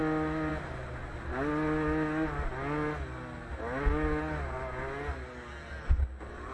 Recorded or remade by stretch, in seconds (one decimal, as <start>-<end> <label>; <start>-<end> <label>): 0.0-6.5 recorded